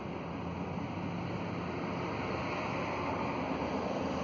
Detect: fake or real real